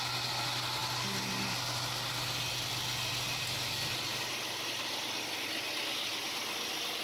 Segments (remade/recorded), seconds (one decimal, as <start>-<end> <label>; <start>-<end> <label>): 0.0-7.0 recorded